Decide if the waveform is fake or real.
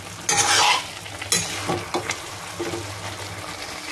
real